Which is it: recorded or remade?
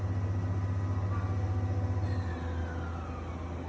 recorded